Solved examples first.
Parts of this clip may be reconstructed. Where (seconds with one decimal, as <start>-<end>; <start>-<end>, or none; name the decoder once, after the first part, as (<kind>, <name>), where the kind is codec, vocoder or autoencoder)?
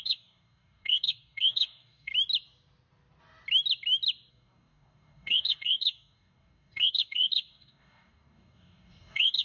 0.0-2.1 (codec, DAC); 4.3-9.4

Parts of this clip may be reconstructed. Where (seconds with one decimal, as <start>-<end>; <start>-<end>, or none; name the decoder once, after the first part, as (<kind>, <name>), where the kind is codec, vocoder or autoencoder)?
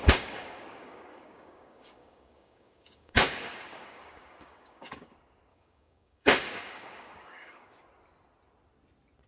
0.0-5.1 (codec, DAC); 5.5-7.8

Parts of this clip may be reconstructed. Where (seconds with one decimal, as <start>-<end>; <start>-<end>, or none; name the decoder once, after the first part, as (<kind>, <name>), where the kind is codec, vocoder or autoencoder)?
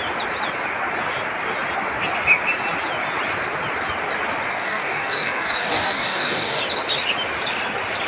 4.5-6.6 (codec, DAC)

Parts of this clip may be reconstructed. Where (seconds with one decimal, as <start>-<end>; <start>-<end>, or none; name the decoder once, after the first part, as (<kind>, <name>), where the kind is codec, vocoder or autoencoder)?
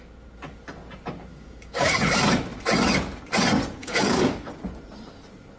1.3-1.9 (codec, DAC); 3.8-4.3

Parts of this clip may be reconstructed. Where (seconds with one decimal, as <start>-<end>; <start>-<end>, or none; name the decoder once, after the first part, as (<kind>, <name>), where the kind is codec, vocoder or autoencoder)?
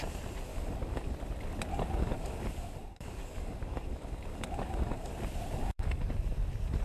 0.5-1.1 (codec, DAC); 1.7-5.1; 5.6-6.1